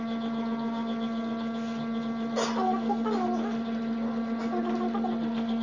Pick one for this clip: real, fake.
real